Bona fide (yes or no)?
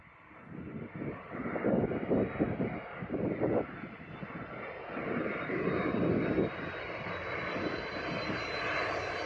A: yes